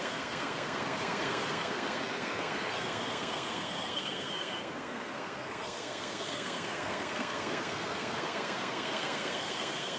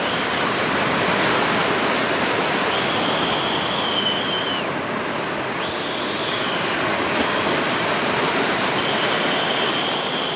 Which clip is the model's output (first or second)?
first